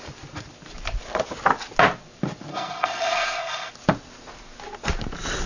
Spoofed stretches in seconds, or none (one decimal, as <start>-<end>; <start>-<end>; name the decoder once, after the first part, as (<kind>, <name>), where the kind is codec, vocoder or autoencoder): 2.5-3.7 (codec, SNAC)